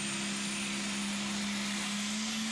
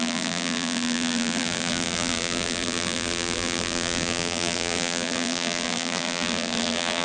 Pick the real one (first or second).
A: first